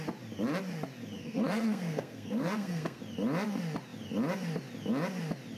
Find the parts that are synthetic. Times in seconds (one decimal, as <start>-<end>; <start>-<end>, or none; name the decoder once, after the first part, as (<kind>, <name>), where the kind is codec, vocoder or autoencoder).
1.2-3.0 (codec, SNAC)